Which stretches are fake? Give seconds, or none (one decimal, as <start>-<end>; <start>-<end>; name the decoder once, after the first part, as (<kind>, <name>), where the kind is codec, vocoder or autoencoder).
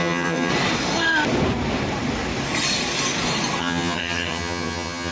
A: 0.0-0.5 (vocoder, HiFi-GAN); 3.6-5.1